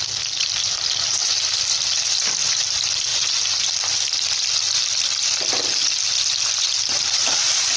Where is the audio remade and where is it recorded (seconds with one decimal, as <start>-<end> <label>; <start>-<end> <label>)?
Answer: 0.0-7.8 recorded